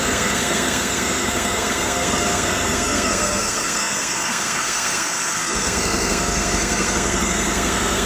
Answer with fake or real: fake